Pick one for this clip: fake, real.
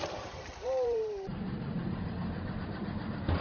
fake